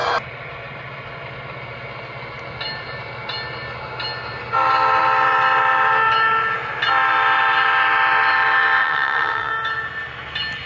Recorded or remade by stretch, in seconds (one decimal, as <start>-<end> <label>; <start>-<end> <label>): 0.0-8.8 recorded; 8.8-9.5 remade; 9.5-10.7 recorded

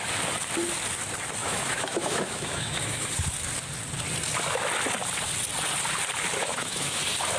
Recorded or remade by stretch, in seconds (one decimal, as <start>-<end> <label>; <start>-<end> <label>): 0.0-1.4 recorded; 1.4-3.1 remade; 3.1-6.4 recorded; 6.4-7.0 remade; 7.0-7.4 recorded